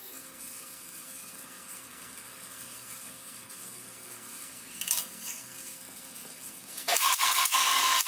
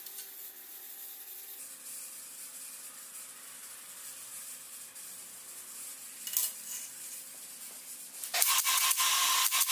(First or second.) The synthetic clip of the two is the first